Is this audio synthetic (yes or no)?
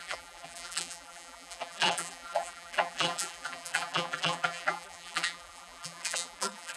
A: yes